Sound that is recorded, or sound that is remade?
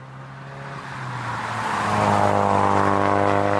recorded